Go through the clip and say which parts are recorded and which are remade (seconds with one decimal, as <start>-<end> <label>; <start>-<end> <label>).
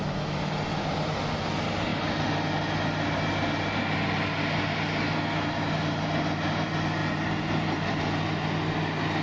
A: 0.0-9.2 recorded